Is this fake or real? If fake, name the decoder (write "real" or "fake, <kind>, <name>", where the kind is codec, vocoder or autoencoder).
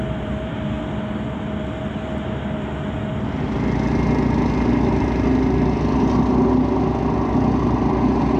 real